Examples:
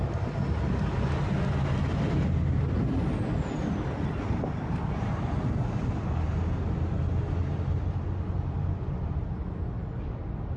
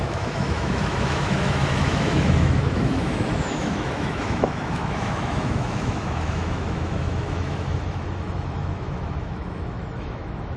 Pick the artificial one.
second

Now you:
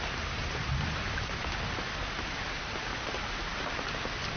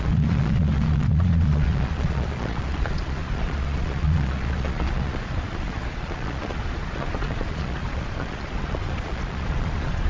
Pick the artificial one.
second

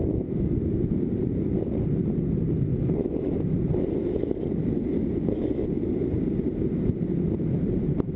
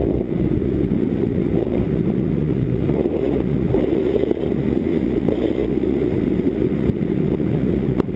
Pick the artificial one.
second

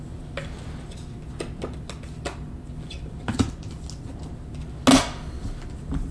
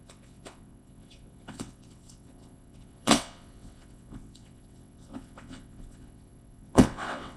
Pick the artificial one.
second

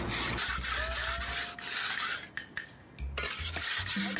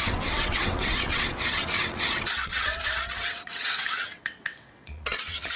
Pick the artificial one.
second